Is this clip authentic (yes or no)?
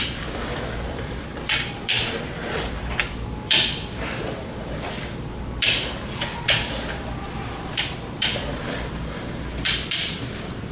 no